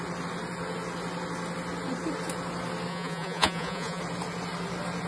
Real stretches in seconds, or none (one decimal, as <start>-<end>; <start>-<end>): 0.0-2.9; 4.0-5.1